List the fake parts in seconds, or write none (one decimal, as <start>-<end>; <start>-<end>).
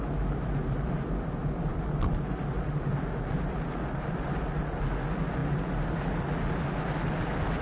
none